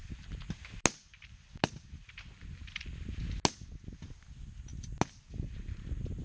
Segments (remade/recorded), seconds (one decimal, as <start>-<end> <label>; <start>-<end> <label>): 0.0-6.2 recorded